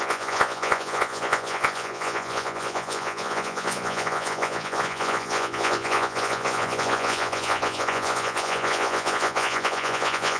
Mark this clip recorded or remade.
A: remade